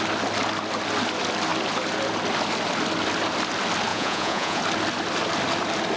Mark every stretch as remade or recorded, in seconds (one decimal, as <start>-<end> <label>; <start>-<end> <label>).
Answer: 0.0-3.9 recorded; 3.9-4.6 remade; 4.6-6.0 recorded